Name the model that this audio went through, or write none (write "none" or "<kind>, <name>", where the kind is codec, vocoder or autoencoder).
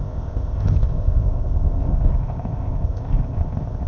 codec, ZipCodec